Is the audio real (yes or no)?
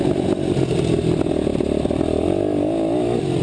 yes